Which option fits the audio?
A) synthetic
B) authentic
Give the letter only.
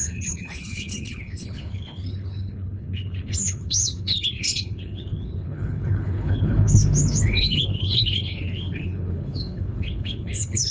A